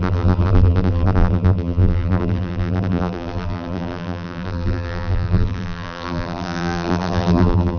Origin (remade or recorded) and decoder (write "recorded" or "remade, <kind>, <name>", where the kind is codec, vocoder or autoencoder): remade, vocoder, BigVGAN v2